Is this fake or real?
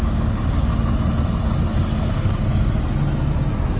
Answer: real